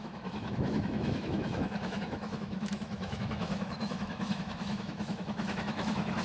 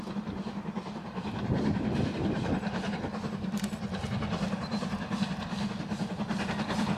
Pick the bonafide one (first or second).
second